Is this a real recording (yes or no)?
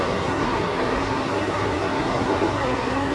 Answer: no